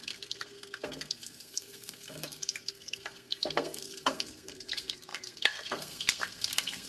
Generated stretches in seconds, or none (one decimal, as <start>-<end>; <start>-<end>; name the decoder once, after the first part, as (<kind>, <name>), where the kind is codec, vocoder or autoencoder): 0.0-6.9 (codec, SNAC)